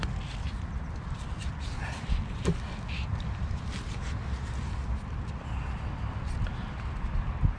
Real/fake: real